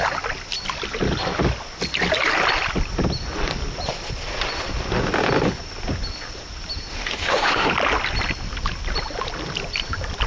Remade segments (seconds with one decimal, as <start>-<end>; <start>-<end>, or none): 6.9-7.7